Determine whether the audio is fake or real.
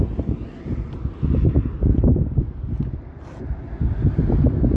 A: real